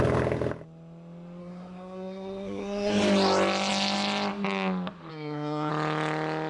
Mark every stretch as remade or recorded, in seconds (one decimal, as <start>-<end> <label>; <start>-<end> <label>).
0.0-1.4 recorded; 1.4-2.9 remade; 2.9-5.1 recorded; 5.1-5.7 remade; 5.7-6.5 recorded